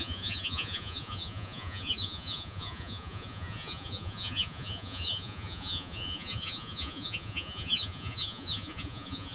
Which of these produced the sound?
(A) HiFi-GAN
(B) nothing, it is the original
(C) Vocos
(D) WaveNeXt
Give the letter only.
C